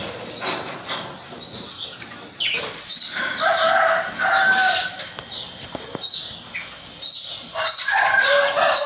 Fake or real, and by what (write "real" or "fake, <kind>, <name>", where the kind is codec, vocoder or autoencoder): real